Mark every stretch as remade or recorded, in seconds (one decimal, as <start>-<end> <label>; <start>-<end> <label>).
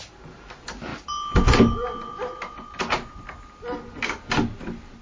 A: 0.0-5.0 recorded